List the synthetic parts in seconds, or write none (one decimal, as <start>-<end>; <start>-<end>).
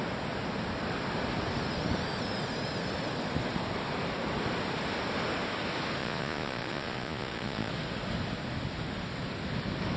6.0-7.7